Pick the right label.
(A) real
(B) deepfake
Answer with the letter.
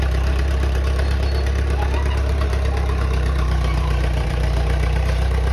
B